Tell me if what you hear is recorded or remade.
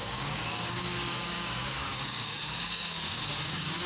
remade